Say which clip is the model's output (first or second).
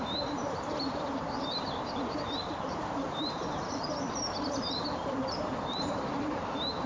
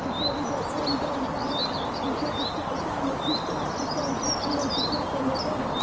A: first